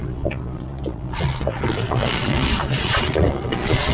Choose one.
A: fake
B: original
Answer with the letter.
A